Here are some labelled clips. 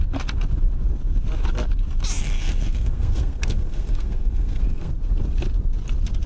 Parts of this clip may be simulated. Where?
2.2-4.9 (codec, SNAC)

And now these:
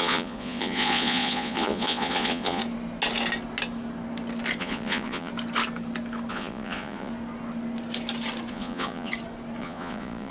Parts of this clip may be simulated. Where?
0.0-2.6 (vocoder, Vocos); 4.6-5.3; 6.3-7.1; 8.5-9.1; 9.6-10.3

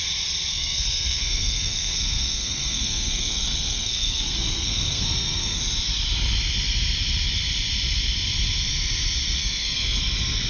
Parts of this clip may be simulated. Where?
0.5-5.6 (codec, SNAC); 9.4-10.0

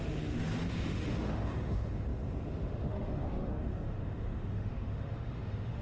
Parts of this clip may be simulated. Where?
0.0-5.8 (autoencoder, DAC-VAE)

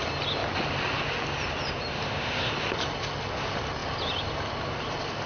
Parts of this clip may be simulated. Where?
1.9-2.5 (autoencoder, DAC-VAE)

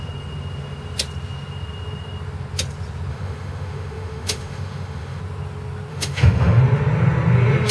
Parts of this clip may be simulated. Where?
3.1-5.2 (autoencoder, DAC-VAE); 5.9-6.6

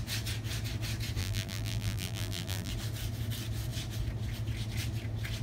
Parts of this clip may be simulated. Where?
1.2-2.7 (vocoder, BigVGAN v2)